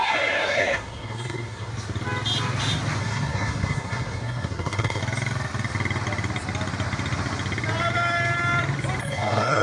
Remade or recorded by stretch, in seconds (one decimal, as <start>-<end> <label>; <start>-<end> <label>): 0.0-1.7 remade; 1.7-3.0 recorded; 3.0-5.0 remade; 5.0-9.0 recorded; 9.0-9.6 remade